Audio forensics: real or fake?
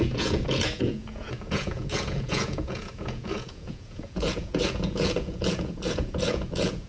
fake